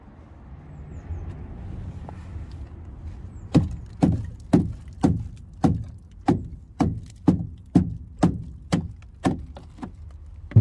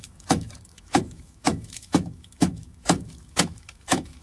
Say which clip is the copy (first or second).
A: second